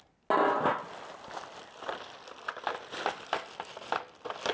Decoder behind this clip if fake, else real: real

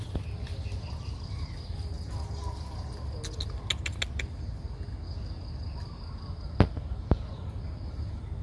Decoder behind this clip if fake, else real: real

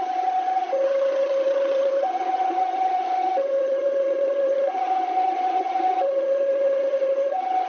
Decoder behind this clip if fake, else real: fake, vocoder, HiFi-GAN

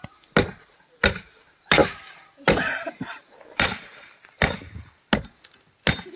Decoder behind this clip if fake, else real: real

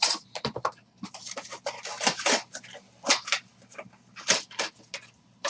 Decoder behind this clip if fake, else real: real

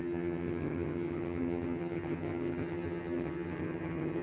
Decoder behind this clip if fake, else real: fake, vocoder, HiFi-GAN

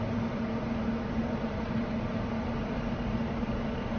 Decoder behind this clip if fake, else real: real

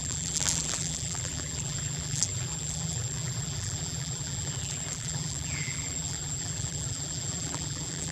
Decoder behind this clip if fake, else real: fake, vocoder, BigVGAN v2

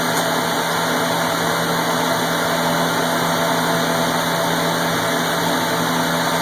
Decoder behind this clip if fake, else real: real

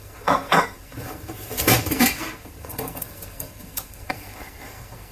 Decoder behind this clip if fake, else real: fake, codec, SNAC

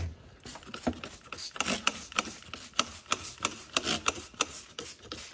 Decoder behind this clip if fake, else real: real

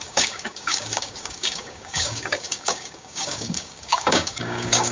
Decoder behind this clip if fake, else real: fake, codec, DAC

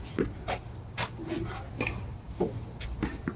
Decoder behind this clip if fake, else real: real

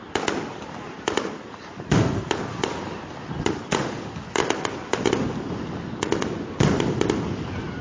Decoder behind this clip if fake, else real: real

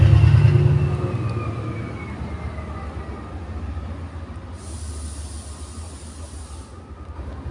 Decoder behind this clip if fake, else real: real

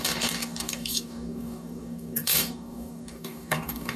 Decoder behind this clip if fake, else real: fake, codec, DAC